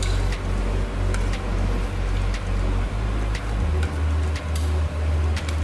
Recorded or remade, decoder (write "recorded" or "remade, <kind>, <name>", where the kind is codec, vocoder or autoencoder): recorded